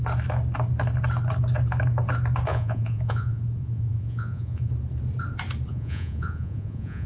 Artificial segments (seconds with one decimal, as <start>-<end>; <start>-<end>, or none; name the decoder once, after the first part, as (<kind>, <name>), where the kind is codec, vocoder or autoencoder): 2.5-4.7 (vocoder, Vocos); 5.7-7.1